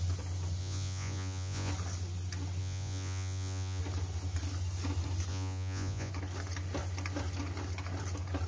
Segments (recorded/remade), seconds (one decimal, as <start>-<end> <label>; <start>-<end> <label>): 0.0-0.6 recorded; 0.6-1.7 remade; 1.7-2.6 recorded; 2.6-3.8 remade; 3.8-5.3 recorded; 5.3-6.1 remade; 6.1-8.5 recorded